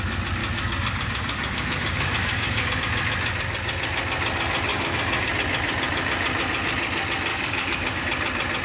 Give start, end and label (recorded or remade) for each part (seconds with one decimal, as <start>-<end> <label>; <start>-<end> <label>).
0.0-0.4 recorded; 0.4-2.8 remade; 2.8-4.7 recorded; 4.7-5.3 remade; 5.3-7.3 recorded; 7.3-8.0 remade; 8.0-8.6 recorded